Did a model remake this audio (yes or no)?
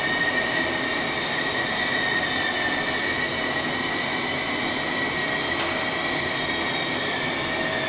no